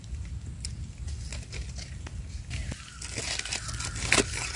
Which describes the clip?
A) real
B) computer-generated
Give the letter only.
A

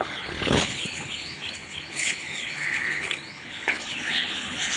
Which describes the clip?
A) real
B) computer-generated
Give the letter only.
B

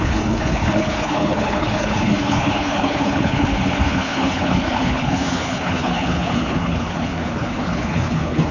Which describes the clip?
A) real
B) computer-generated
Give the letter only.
B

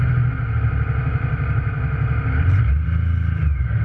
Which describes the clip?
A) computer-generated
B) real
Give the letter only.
B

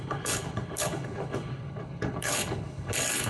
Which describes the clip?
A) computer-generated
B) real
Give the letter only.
A